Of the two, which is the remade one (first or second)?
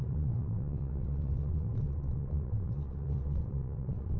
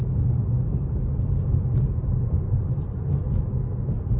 first